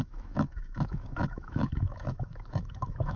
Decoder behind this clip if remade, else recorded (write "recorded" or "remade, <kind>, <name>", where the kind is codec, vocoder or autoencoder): remade, autoencoder, DAC-VAE